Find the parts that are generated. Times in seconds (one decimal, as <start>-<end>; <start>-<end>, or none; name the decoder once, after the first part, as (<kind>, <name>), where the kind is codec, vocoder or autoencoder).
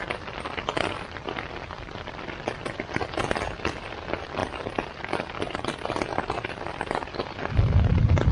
none